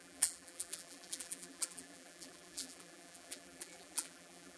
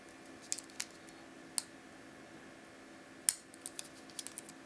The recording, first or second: second